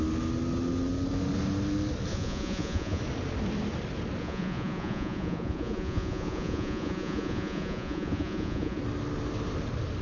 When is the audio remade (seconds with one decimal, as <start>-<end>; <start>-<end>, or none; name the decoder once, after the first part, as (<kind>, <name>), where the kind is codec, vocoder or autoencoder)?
2.1-3.0 (vocoder, Vocos); 4.2-8.8

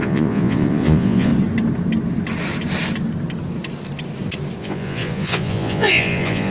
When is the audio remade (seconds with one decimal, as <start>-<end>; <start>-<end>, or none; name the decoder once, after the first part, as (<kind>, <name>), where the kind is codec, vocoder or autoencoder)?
0.0-1.3 (vocoder, Vocos); 4.6-6.5